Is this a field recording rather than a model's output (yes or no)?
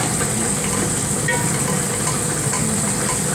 yes